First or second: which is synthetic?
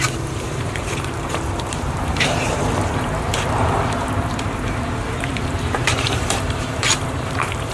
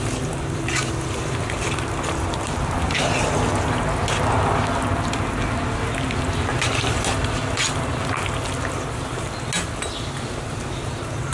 first